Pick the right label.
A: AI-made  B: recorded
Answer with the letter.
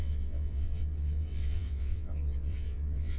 A